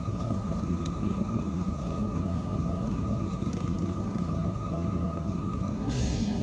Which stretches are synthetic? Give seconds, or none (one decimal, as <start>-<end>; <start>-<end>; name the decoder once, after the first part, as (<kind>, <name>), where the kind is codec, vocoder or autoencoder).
0.0-6.4 (codec, SNAC)

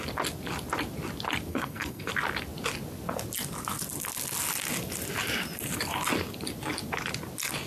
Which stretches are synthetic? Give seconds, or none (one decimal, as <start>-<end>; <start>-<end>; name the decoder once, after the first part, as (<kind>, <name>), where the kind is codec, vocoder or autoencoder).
1.5-2.1 (codec, SNAC)

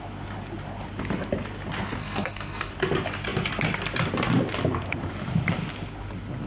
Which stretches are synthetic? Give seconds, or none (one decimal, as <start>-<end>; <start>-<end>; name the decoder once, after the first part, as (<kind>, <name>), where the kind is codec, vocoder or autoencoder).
2.0-2.7 (codec, SNAC)

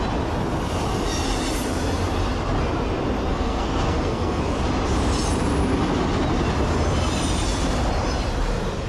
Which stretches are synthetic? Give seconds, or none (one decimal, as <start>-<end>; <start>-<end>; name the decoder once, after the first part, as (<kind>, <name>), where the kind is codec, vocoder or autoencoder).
3.3-4.4 (codec, SNAC)

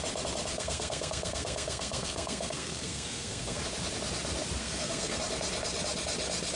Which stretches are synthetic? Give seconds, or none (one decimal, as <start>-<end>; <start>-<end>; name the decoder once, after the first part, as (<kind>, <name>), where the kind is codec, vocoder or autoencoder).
0.5-3.6 (codec, SNAC); 4.6-5.2